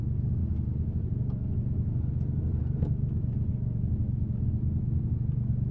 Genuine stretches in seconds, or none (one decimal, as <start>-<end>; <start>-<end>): 0.0-5.7